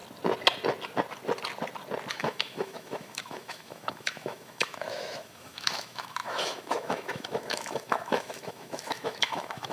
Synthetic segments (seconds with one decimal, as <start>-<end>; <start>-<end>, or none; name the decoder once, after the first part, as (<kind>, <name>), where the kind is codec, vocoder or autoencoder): 2.1-9.7 (autoencoder, DAC-VAE)